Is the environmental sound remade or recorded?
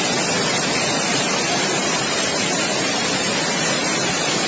recorded